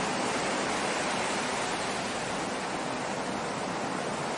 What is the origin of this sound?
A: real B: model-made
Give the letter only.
A